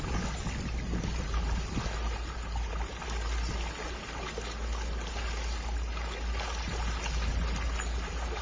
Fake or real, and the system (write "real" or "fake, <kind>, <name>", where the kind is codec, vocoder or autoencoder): real